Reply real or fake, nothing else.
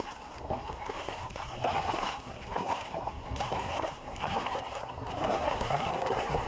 fake